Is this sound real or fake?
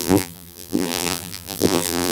fake